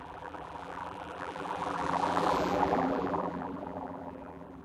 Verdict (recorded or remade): remade